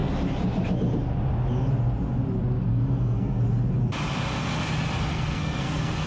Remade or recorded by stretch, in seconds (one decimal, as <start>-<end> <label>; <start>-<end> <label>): 0.0-2.7 recorded; 2.7-3.4 remade; 3.4-5.1 recorded; 5.1-6.1 remade